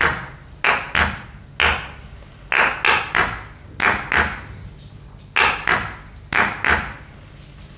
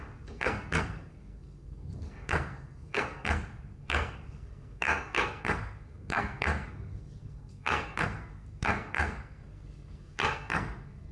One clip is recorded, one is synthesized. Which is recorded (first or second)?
first